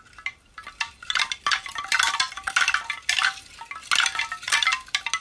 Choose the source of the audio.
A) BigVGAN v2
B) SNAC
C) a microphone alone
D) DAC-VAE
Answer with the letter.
C